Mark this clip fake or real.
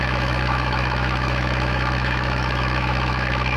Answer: fake